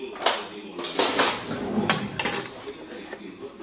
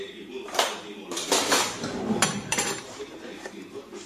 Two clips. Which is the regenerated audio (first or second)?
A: second